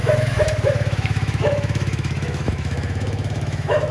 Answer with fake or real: fake